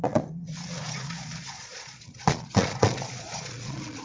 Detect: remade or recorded remade